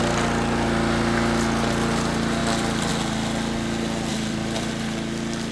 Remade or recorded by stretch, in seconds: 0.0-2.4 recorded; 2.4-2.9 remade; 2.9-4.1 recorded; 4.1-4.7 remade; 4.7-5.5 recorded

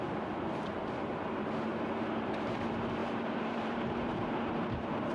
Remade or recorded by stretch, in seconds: 0.0-1.7 recorded; 1.7-2.6 remade; 2.6-3.0 recorded; 3.0-4.4 remade; 4.4-5.1 recorded

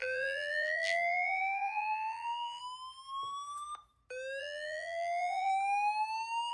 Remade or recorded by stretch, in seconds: 0.0-2.6 remade; 2.6-4.4 recorded; 4.4-5.5 remade; 5.5-6.5 recorded